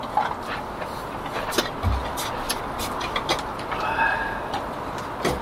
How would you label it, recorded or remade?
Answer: recorded